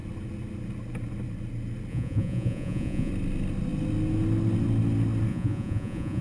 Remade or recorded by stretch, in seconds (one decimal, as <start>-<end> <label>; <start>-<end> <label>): 0.0-1.9 recorded; 1.9-3.1 remade; 3.1-5.3 recorded; 5.3-6.2 remade